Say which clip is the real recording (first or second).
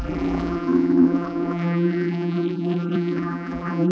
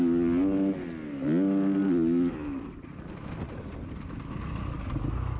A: second